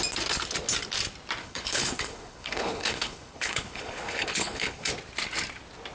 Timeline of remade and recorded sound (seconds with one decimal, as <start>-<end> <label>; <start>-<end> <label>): 0.0-1.4 recorded; 1.4-4.9 remade; 4.9-5.9 recorded